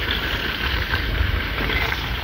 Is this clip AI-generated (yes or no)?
yes